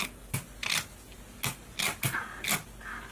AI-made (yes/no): no